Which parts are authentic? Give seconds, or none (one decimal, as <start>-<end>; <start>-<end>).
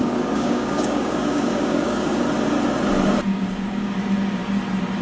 2.2-3.3; 4.0-5.0